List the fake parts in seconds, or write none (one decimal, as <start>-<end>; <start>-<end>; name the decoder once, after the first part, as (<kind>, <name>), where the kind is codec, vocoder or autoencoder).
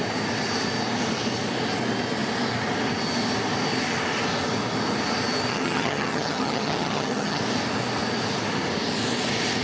5.5-7.4 (vocoder, HiFi-GAN)